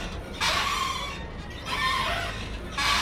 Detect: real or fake fake